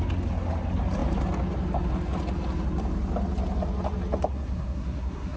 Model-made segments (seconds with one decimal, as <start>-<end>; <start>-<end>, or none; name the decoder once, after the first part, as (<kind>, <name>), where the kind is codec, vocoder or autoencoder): 4.3-5.4 (codec, SNAC)